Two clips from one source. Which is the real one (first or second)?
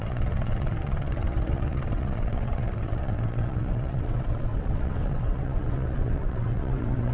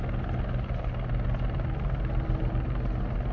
second